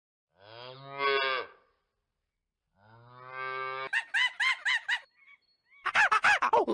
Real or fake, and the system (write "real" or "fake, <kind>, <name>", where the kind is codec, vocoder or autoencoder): real